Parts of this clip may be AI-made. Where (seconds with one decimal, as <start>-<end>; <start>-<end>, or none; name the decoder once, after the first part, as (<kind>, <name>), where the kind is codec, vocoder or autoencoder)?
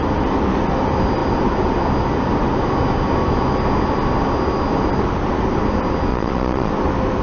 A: 6.1-6.7 (vocoder, Vocos)